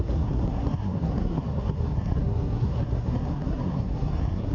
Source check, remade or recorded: remade